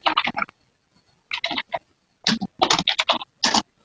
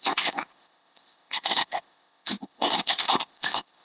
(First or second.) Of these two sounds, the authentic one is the first